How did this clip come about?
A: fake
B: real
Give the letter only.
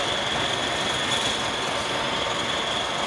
B